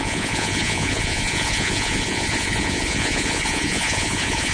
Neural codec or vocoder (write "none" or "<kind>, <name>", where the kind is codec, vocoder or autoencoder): vocoder, Vocos